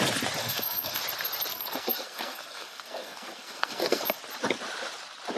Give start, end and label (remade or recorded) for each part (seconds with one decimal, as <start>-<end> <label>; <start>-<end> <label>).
0.0-0.4 recorded; 0.4-1.0 remade; 1.0-1.5 recorded; 1.5-4.2 remade; 4.2-5.4 recorded